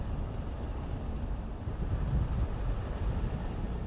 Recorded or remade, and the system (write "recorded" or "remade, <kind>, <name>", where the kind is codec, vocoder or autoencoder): recorded